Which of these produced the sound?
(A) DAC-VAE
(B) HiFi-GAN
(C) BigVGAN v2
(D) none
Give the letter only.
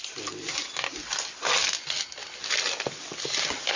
D